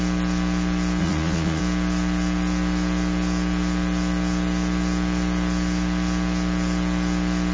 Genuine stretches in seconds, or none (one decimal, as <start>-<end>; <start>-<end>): 0.0-1.0; 1.6-7.5